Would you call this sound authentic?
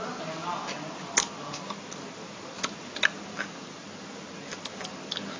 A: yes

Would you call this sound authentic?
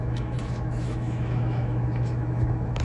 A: no